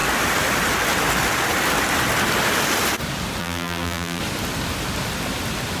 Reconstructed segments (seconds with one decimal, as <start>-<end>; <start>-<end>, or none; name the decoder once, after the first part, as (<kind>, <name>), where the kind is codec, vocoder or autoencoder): 3.4-4.2 (vocoder, BigVGAN v2)